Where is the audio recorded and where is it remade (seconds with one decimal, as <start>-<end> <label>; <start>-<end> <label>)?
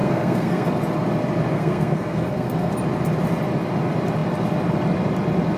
0.0-0.7 remade; 0.7-1.5 recorded; 1.5-2.7 remade; 2.7-5.6 recorded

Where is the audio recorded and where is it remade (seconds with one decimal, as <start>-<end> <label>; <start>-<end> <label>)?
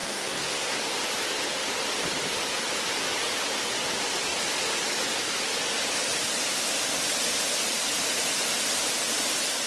0.0-0.8 remade; 0.8-9.7 recorded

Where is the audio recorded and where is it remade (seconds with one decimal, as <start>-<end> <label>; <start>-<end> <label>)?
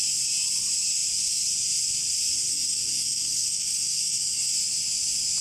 0.0-2.5 recorded; 2.5-4.5 remade; 4.5-5.4 recorded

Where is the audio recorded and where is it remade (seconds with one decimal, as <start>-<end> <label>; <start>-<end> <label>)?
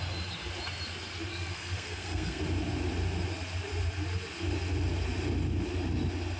0.0-1.3 recorded; 1.3-2.4 remade; 2.4-6.4 recorded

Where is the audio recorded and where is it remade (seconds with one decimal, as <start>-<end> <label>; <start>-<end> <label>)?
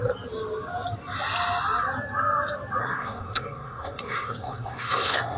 0.0-2.8 recorded; 2.8-5.4 remade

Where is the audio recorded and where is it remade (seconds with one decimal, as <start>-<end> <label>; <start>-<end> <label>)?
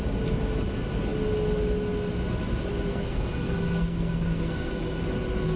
0.0-2.9 recorded; 2.9-5.0 remade; 5.0-5.6 recorded